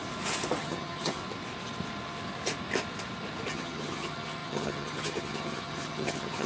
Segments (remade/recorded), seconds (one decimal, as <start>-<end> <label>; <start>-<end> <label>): 0.0-0.6 recorded; 0.6-1.2 remade; 1.2-3.5 recorded; 3.5-6.5 remade

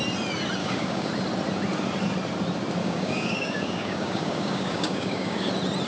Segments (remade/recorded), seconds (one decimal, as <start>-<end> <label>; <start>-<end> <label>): 0.0-0.6 recorded; 0.6-1.1 remade; 1.1-2.8 recorded; 2.8-5.5 remade; 5.5-5.9 recorded

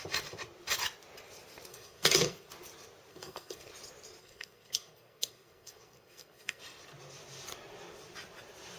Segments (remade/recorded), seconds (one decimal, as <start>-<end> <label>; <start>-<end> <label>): 0.0-1.7 recorded; 1.7-2.5 remade; 2.5-3.1 recorded; 3.1-3.7 remade; 3.7-4.2 recorded; 4.2-6.6 remade; 6.6-8.8 recorded

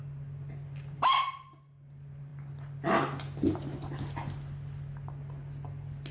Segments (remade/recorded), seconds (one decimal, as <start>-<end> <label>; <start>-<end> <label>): 0.0-6.1 recorded

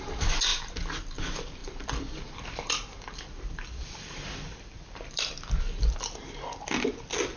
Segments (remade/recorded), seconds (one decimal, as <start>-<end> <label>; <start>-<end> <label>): 0.0-1.6 recorded; 1.6-6.0 remade; 6.0-7.4 recorded

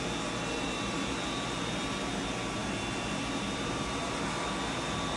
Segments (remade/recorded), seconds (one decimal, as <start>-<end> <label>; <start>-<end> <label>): 0.0-5.2 recorded

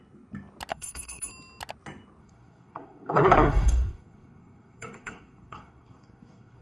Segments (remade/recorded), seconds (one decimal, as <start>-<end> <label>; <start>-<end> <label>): 0.0-0.7 recorded; 0.7-1.3 remade; 1.3-2.2 recorded; 2.2-6.6 remade

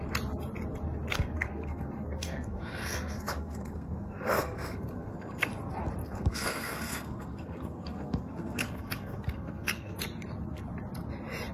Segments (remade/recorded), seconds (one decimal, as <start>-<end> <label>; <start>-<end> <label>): 0.0-1.1 recorded; 1.1-5.5 remade; 5.5-6.0 recorded; 6.0-10.0 remade; 10.0-11.5 recorded